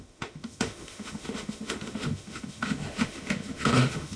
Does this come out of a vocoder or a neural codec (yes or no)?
yes